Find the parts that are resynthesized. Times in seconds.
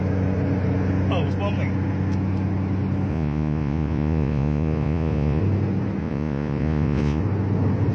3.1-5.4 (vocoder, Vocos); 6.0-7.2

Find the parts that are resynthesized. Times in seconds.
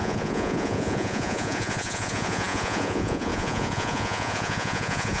0.0-5.2 (vocoder, Vocos)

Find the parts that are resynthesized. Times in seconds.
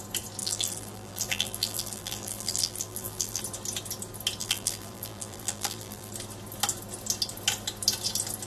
0.4-3.4 (vocoder, BigVGAN v2); 4.4-6.1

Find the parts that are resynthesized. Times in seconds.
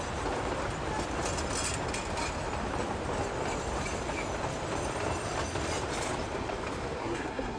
7.0-7.6 (codec, SNAC)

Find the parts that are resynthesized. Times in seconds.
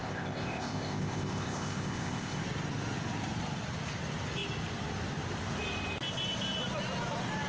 0.0-2.4 (codec, ZipCodec)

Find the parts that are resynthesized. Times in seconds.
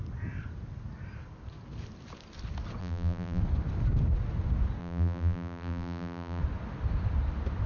2.8-3.4 (vocoder, BigVGAN v2); 4.8-6.4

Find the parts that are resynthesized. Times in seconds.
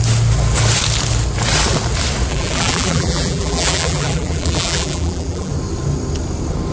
2.3-5.5 (vocoder, BigVGAN v2)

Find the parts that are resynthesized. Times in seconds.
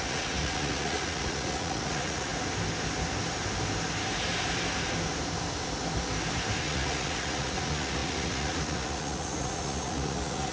0.0-2.3 (vocoder, Vocos); 6.6-10.5